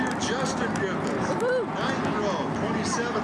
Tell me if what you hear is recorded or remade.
recorded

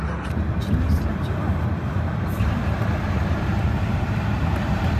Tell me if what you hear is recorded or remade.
remade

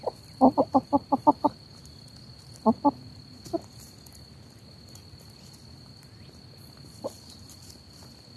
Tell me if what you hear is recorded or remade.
recorded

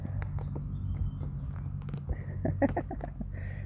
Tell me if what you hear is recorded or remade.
recorded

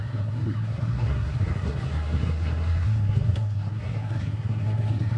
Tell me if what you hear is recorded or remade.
remade